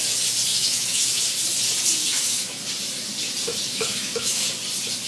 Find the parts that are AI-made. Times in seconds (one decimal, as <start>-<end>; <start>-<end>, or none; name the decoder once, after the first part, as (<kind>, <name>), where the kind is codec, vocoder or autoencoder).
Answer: 0.5-1.2 (autoencoder, DAC-VAE); 2.0-2.6; 3.7-4.4

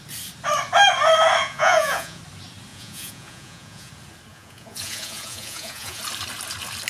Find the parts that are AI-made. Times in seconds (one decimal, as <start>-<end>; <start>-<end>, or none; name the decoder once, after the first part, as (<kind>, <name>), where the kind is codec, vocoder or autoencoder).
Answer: 1.4-2.2 (vocoder, Vocos); 2.7-3.9; 4.3-6.0